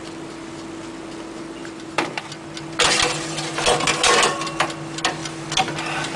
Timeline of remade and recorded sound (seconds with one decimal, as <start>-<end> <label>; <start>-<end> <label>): 0.0-1.6 recorded; 1.6-2.1 remade; 2.1-6.2 recorded